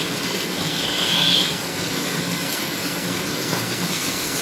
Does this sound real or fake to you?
fake